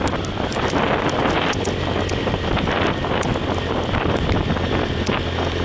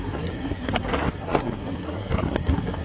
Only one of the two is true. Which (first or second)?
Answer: first